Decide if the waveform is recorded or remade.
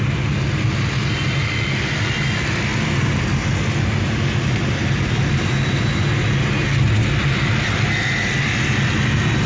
recorded